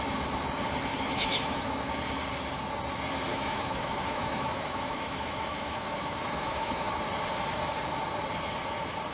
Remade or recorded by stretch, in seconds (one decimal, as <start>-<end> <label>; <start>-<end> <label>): 0.0-0.9 recorded; 0.9-1.7 remade; 1.7-3.3 recorded; 3.3-6.9 remade; 6.9-9.1 recorded